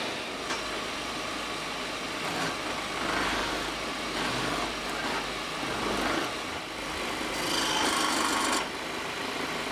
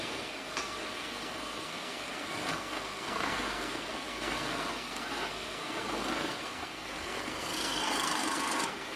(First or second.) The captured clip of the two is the first